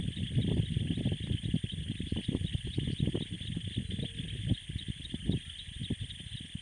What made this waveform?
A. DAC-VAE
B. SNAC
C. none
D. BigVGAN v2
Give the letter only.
C